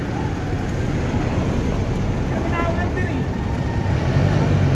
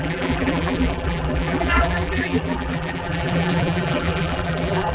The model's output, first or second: second